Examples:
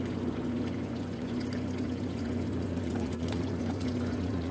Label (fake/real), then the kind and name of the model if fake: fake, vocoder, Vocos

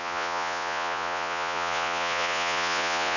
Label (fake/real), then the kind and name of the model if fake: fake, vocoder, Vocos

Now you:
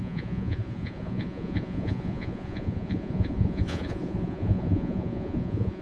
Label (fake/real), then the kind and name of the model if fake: fake, vocoder, Vocos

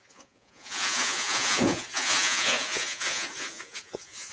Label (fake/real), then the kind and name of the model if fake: fake, vocoder, Vocos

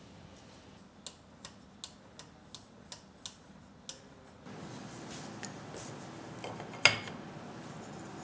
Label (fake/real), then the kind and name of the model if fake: real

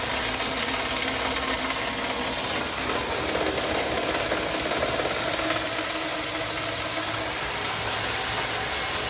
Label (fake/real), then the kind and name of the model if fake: real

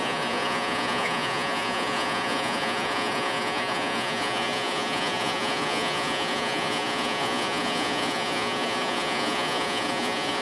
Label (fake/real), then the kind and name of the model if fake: fake, vocoder, Vocos